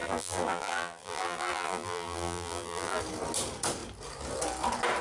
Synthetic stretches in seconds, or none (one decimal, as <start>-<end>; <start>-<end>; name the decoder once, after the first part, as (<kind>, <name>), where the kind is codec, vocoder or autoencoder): 0.0-3.0 (vocoder, BigVGAN v2)